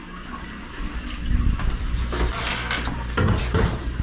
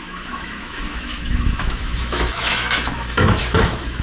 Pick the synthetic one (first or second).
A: second